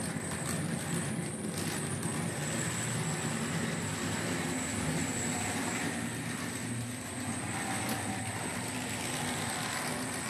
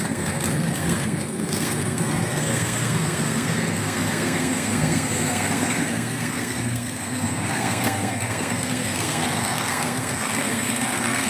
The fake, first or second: second